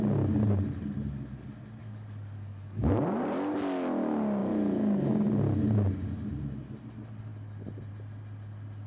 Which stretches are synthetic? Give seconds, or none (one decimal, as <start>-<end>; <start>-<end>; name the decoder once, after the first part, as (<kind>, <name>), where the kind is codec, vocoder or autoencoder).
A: 1.8-2.9 (codec, DAC)